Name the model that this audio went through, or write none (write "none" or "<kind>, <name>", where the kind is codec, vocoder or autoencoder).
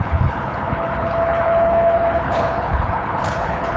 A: codec, HILCodec